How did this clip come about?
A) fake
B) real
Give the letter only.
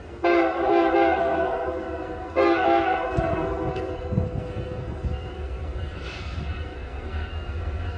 A